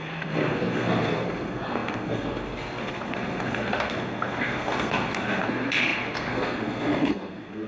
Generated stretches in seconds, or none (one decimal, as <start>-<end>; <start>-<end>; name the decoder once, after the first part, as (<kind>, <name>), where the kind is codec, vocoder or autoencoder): 0.0-7.7 (codec, SNAC)